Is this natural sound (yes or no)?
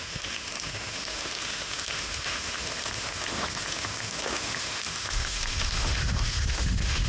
no